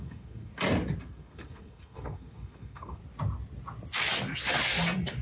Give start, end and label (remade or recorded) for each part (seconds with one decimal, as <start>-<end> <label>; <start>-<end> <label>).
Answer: 0.0-0.5 remade; 0.5-1.0 recorded; 1.0-3.0 remade; 3.0-5.2 recorded